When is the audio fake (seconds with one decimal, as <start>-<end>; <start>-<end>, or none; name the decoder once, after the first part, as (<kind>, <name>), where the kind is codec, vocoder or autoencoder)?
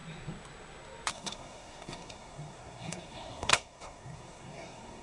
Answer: 1.1-5.0 (codec, SNAC)